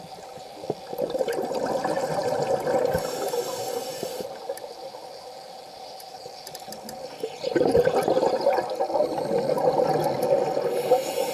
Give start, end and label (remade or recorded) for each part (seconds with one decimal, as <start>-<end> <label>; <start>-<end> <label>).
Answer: 0.0-11.3 recorded